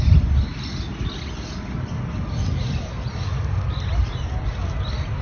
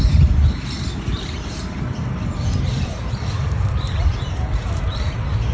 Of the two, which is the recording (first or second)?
first